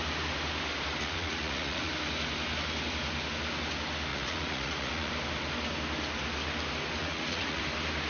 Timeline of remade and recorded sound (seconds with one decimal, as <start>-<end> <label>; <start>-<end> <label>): 0.0-1.0 recorded; 1.0-1.9 remade; 1.9-4.1 recorded; 4.1-5.1 remade; 5.1-7.0 recorded; 7.0-7.6 remade; 7.6-8.1 recorded